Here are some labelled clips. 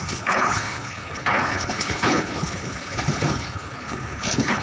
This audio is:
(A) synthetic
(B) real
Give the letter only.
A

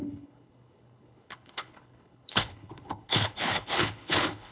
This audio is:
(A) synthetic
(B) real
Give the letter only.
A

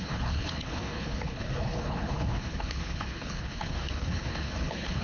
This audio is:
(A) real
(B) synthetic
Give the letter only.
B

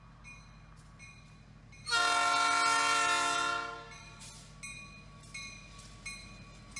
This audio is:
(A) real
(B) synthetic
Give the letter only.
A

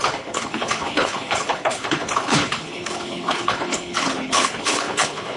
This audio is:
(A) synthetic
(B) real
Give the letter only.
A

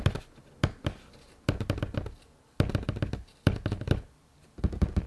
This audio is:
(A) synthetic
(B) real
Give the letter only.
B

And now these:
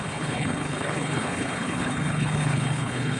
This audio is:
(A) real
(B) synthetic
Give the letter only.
B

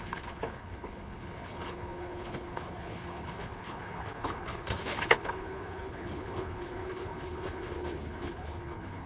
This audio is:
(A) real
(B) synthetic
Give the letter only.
B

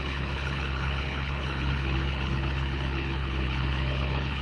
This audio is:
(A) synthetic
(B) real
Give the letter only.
A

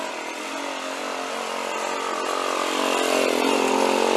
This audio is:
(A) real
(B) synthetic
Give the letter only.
A